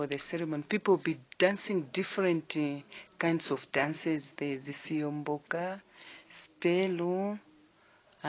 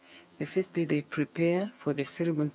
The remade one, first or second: second